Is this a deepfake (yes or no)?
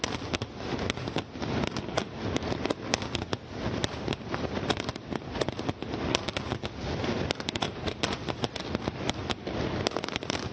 no